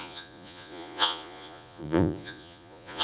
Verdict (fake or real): fake